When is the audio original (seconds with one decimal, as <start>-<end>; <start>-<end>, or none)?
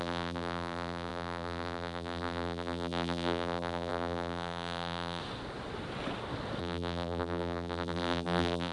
5.2-6.6